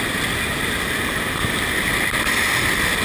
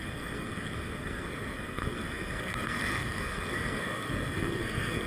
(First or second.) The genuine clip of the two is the first